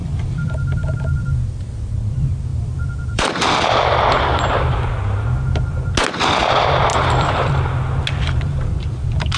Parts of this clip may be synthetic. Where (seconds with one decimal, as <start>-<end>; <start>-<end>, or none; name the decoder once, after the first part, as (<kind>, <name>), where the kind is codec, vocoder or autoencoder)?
0.0-1.9 (vocoder, BigVGAN v2); 2.5-3.8; 6.9-7.5